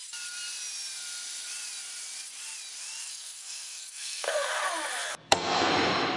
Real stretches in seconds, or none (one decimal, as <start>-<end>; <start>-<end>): 0.0-3.0; 4.6-5.0; 5.7-6.2